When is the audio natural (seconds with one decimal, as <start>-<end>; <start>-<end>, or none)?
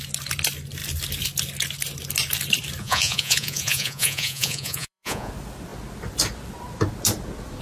0.0-2.8; 5.3-7.6